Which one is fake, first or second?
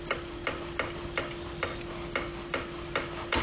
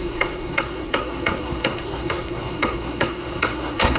second